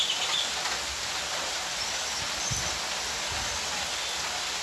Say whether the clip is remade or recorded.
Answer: remade